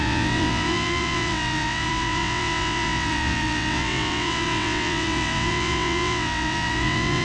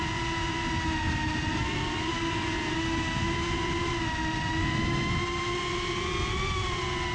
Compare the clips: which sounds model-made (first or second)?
first